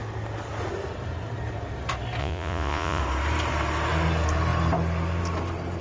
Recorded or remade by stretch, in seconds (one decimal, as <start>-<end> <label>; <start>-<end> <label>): 0.0-2.2 recorded; 2.2-3.0 remade; 3.0-5.8 recorded